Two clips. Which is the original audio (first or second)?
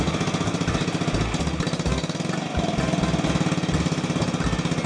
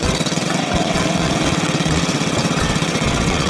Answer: first